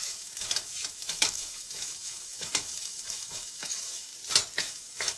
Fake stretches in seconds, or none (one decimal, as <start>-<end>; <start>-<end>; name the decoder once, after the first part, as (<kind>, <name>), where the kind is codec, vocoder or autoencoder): 0.0-4.1 (autoencoder, DAC-VAE); 4.6-5.2